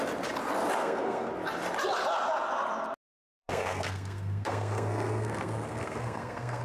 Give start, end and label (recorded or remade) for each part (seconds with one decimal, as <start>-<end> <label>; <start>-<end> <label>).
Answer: 0.0-0.8 recorded; 0.8-1.3 remade; 1.3-3.2 recorded; 3.2-6.6 remade